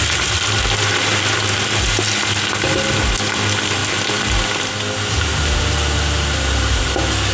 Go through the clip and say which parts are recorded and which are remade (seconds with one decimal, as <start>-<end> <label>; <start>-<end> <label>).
0.0-7.3 recorded

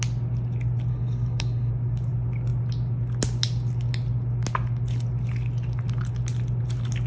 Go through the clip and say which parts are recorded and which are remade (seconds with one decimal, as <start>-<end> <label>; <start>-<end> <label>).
0.0-0.9 recorded; 0.9-1.7 remade; 1.7-7.1 recorded

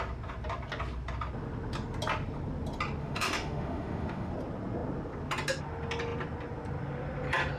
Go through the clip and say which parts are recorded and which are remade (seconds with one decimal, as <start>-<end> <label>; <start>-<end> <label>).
0.0-3.0 recorded; 3.0-4.3 remade; 4.3-7.6 recorded